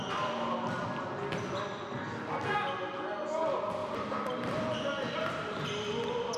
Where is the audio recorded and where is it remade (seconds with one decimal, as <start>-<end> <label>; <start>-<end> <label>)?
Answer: 0.0-3.8 recorded; 3.8-5.7 remade; 5.7-6.4 recorded